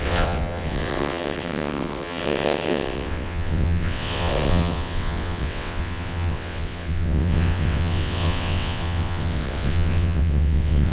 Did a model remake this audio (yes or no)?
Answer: yes